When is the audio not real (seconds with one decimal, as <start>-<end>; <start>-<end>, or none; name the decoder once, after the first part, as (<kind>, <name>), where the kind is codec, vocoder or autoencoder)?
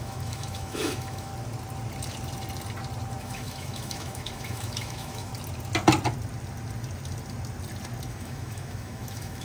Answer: 0.0-1.3 (autoencoder, DAC-VAE); 3.2-5.3; 8.1-9.4